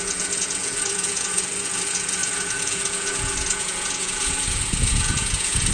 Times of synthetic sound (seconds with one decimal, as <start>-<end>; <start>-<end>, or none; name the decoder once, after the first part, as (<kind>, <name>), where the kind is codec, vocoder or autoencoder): 0.0-5.7 (vocoder, Vocos)